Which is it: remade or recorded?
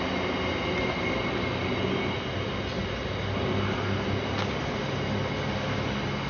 recorded